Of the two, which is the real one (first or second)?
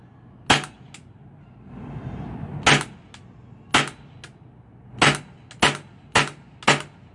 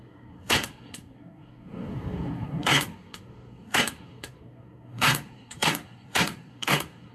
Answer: first